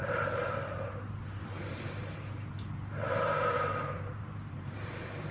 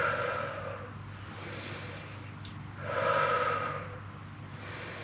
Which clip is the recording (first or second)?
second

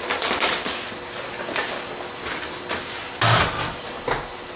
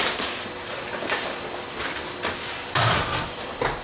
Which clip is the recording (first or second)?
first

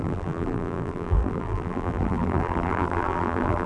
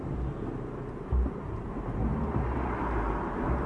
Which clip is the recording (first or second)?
second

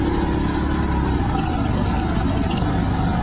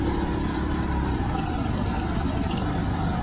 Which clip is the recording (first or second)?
first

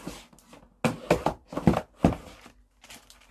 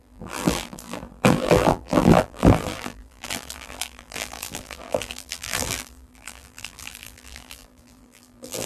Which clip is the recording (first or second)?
first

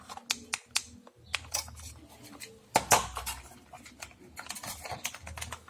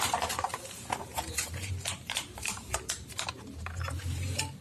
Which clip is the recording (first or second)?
first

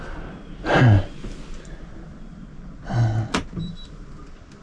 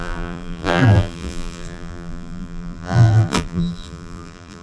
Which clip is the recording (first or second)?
first